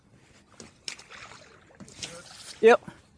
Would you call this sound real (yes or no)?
yes